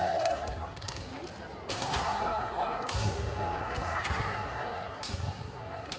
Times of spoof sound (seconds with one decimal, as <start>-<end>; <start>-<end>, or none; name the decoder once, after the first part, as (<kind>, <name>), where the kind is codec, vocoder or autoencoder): 0.0-1.1 (codec, SNAC); 1.7-6.0